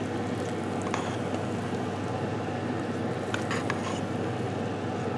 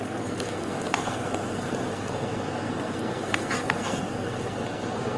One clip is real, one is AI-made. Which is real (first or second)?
first